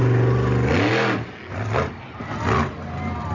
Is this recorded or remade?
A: recorded